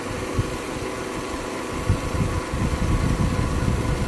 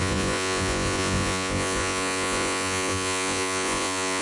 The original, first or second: first